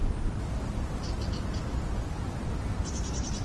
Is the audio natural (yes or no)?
yes